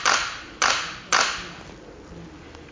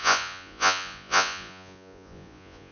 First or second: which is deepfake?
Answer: second